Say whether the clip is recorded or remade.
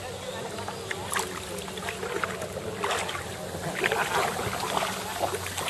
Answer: recorded